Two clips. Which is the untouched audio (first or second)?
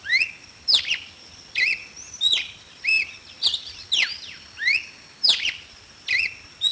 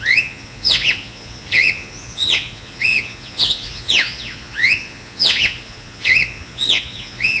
first